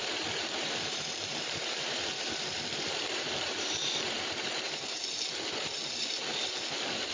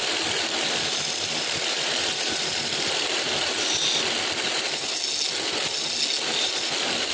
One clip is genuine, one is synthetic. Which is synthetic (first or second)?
first